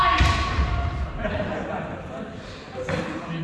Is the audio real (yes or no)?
yes